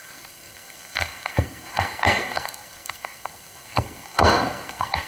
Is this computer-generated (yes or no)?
yes